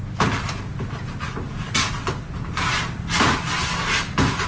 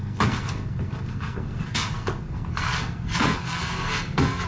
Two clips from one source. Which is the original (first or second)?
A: first